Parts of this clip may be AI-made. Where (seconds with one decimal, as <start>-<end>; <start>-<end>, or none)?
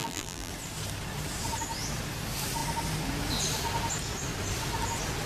0.0-0.5